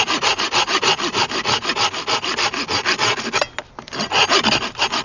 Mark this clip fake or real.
real